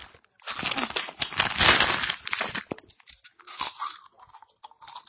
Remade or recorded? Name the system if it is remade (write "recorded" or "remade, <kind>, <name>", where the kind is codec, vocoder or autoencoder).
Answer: recorded